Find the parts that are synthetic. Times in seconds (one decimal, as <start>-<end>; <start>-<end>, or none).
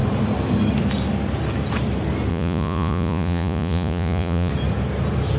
2.3-4.5